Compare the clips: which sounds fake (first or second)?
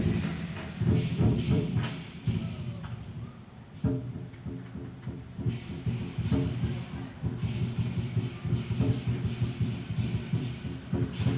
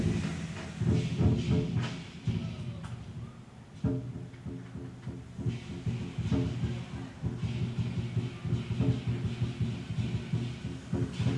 first